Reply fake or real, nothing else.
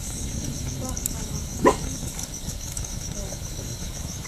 fake